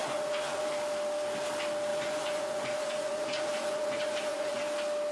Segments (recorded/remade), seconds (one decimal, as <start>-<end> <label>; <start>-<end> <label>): 0.0-0.7 remade; 0.7-1.9 recorded; 1.9-4.6 remade; 4.6-5.1 recorded